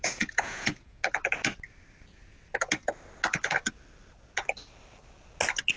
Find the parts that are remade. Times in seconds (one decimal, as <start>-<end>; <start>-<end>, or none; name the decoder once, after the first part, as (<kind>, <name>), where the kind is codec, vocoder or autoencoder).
0.0-1.0 (vocoder, Vocos)